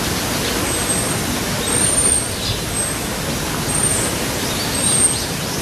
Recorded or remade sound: recorded